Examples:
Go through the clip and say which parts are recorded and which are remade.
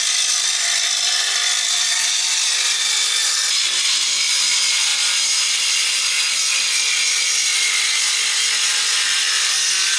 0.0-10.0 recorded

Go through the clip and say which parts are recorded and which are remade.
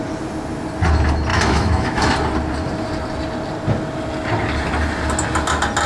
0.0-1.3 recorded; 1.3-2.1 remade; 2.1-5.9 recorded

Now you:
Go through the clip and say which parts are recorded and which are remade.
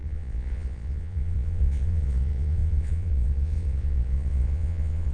0.0-5.1 remade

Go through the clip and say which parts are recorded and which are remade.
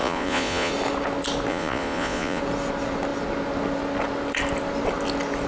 0.0-0.7 remade; 0.7-1.5 recorded; 1.5-2.4 remade; 2.4-5.5 recorded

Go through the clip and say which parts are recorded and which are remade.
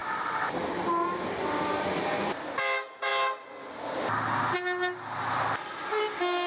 0.0-6.5 recorded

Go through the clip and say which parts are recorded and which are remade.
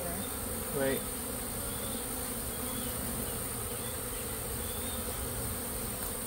0.0-6.3 recorded